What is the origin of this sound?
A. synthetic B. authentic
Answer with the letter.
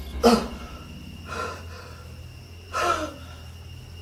B